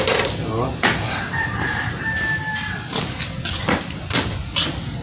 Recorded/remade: recorded